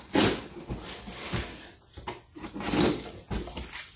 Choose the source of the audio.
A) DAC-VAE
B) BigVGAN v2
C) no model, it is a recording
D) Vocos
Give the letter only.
C